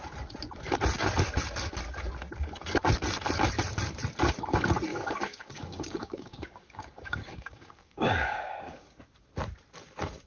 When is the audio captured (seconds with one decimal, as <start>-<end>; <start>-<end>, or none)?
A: 0.0-4.9; 9.1-10.3